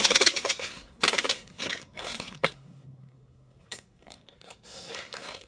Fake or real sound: fake